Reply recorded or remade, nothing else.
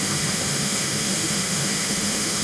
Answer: remade